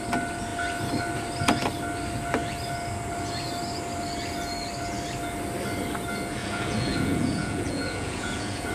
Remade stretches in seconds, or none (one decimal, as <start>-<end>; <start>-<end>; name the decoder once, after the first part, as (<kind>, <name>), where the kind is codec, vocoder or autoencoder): 6.4-8.7 (vocoder, Vocos)